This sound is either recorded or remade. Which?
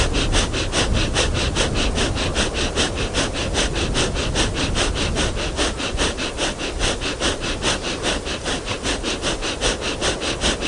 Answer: recorded